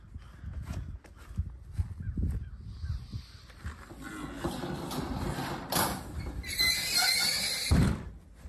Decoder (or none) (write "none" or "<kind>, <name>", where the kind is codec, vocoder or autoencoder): none